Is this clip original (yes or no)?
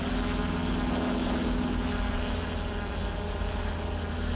yes